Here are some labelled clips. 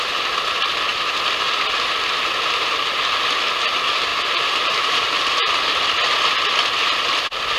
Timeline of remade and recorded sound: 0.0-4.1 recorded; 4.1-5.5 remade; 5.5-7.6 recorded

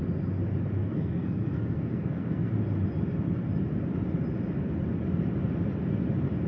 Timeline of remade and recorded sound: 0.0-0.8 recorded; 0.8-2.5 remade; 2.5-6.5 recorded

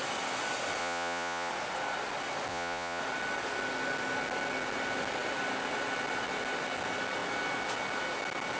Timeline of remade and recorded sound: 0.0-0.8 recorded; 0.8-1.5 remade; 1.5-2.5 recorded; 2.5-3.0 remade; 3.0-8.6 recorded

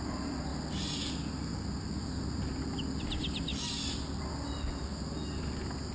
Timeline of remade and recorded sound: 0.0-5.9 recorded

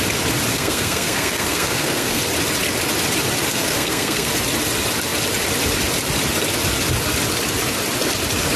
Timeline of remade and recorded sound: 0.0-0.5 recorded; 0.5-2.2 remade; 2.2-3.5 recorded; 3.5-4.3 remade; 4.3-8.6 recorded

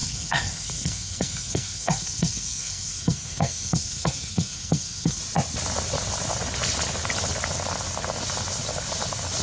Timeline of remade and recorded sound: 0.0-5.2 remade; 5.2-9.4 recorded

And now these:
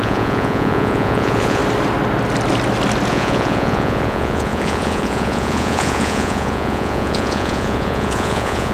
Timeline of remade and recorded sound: 0.0-1.6 remade; 1.6-3.1 recorded; 3.1-8.7 remade